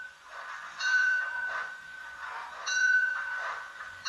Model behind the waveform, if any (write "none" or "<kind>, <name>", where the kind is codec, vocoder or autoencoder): vocoder, Vocos